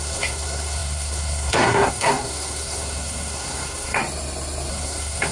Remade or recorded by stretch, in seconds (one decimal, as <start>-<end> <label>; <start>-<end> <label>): 0.0-4.0 remade; 4.0-4.7 recorded; 4.7-5.3 remade